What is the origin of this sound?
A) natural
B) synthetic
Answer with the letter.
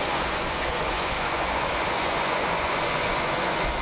B